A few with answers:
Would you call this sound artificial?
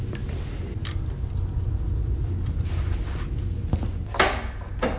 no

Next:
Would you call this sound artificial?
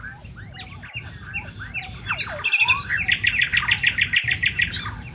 no